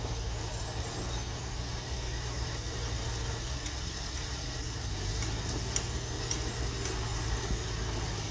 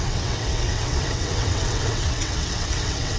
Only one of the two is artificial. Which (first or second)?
second